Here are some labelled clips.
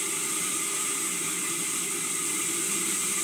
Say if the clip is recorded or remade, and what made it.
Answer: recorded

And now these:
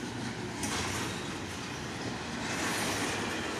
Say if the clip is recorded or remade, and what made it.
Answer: recorded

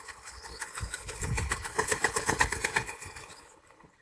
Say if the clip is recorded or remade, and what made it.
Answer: remade, codec, HILCodec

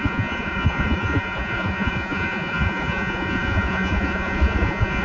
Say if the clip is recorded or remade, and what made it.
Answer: remade, vocoder, Vocos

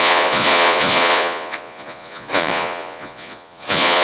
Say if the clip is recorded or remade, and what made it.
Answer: remade, vocoder, Vocos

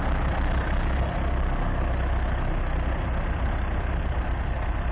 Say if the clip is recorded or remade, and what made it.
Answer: recorded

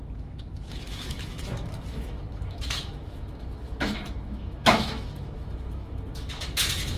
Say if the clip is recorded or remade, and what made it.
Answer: remade, autoencoder, DAC-VAE